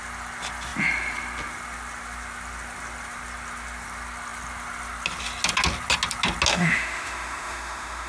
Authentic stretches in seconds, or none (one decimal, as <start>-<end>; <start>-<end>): 0.0-6.5